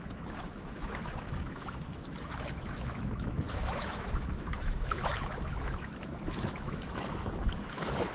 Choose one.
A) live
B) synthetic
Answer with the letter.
B